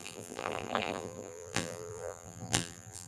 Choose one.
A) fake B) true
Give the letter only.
A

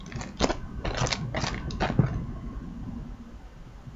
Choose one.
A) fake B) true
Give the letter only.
B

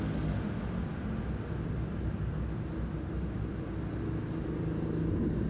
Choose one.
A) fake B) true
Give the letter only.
B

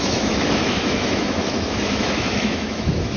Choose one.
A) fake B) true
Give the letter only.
A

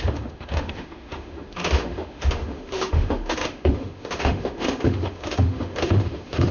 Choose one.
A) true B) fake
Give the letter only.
B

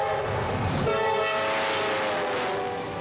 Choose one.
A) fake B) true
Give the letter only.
B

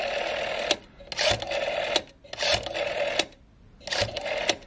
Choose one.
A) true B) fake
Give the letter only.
A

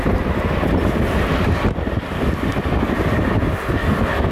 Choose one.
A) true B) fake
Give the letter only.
A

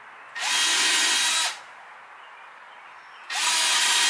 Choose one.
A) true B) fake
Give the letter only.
A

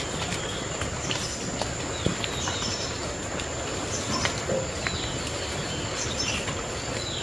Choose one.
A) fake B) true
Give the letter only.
B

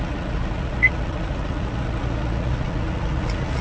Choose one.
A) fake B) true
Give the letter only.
A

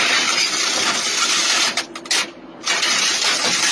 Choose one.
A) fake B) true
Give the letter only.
B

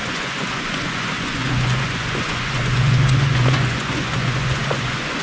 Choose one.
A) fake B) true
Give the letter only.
A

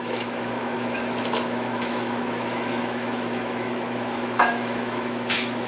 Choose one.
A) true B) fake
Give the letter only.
B